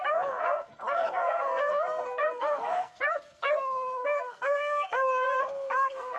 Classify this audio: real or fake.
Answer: fake